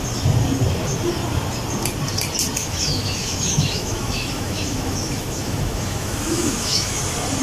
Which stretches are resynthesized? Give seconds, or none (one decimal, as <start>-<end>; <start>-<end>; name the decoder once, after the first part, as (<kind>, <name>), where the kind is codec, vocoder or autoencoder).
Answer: 2.6-7.0 (autoencoder, DAC-VAE)